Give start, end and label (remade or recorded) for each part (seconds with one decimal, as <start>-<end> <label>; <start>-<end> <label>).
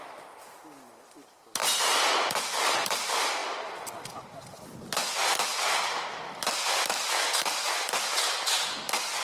0.0-1.6 recorded; 1.6-2.3 remade; 2.3-9.2 recorded